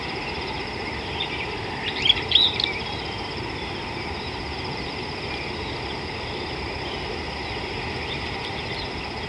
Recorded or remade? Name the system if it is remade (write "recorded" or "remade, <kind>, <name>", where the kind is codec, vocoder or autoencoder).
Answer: recorded